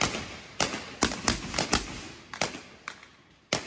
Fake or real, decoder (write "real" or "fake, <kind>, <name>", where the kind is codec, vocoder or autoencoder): real